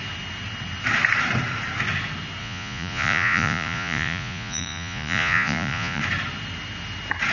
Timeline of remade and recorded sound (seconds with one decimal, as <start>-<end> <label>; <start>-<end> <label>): 0.0-2.4 recorded; 2.4-6.0 remade; 6.0-7.3 recorded